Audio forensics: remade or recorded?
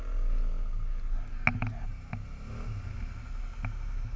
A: recorded